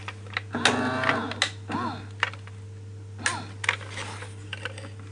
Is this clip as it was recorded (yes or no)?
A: yes